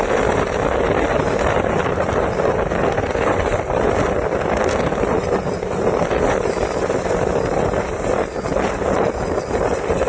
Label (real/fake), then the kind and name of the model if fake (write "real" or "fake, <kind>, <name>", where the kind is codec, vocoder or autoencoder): real